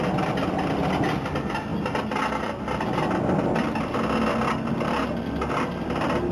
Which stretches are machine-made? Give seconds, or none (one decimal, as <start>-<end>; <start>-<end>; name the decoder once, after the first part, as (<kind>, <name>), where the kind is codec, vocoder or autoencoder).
none